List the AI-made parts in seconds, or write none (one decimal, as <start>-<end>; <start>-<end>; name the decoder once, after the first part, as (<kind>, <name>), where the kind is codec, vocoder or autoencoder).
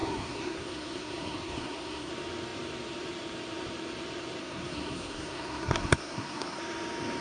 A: 0.0-2.1 (codec, SNAC); 4.4-6.6